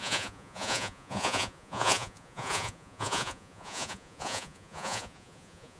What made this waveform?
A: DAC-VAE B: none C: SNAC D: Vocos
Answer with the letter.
D